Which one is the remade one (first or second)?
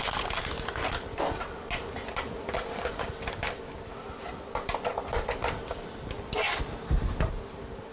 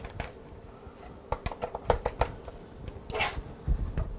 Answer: second